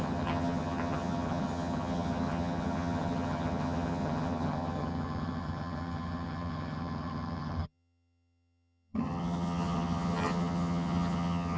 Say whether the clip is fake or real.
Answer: fake